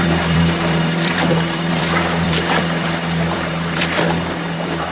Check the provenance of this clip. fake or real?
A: fake